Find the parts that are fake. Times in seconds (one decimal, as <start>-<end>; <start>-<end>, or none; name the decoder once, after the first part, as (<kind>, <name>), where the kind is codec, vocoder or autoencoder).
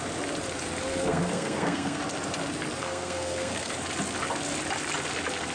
0.9-2.0 (codec, SNAC); 2.8-3.7